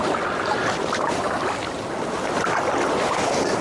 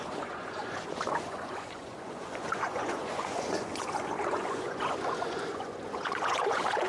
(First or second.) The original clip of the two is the first